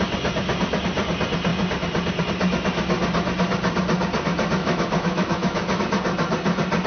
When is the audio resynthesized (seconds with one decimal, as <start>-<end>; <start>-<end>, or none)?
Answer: 4.6-5.8